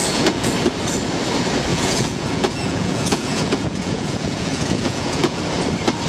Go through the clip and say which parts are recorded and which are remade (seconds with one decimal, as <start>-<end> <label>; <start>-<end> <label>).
0.0-0.5 remade; 0.5-1.7 recorded; 1.7-5.4 remade; 5.4-6.1 recorded